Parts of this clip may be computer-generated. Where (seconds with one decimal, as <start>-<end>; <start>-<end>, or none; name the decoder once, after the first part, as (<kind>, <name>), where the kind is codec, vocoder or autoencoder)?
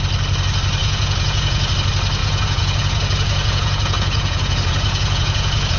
0.8-1.7 (vocoder, Vocos); 2.2-5.8